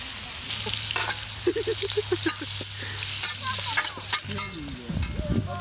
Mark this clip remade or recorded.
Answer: recorded